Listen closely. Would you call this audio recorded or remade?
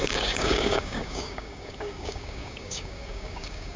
remade